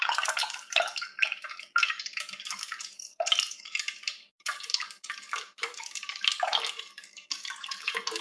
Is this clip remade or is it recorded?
remade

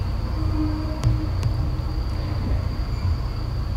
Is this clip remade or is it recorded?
recorded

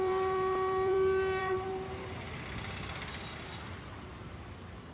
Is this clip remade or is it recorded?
remade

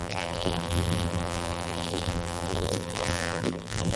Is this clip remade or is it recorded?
remade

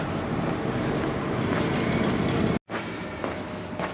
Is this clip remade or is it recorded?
recorded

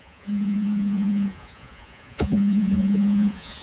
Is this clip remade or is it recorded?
remade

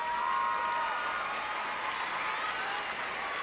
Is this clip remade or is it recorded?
recorded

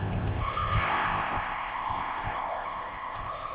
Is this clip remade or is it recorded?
remade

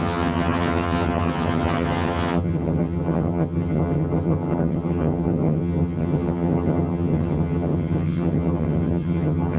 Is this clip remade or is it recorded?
remade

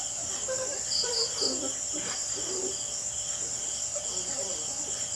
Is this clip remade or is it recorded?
recorded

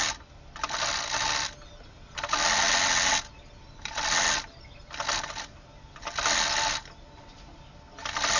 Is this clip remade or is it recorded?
recorded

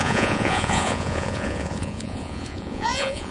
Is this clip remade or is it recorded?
remade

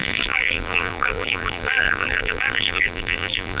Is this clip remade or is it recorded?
remade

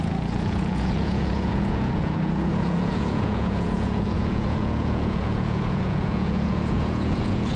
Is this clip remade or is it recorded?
remade